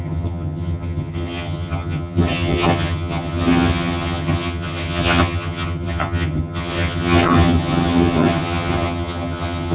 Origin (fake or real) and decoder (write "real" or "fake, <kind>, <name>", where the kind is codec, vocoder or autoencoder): fake, vocoder, HiFi-GAN